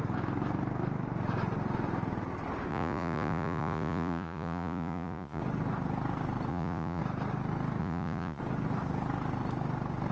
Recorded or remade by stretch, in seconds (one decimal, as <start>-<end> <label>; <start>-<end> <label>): 0.0-2.7 recorded; 2.7-5.4 remade; 5.4-6.5 recorded; 6.5-7.0 remade; 7.0-7.8 recorded; 7.8-8.4 remade; 8.4-10.1 recorded